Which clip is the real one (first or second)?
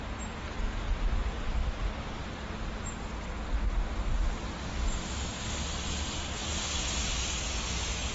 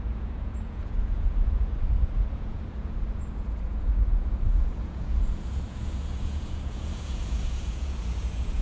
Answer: first